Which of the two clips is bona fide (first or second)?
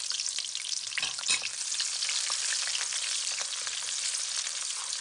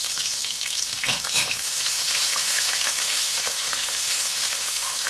first